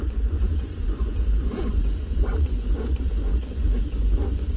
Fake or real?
fake